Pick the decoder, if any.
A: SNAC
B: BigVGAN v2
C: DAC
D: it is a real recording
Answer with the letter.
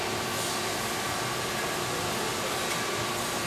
D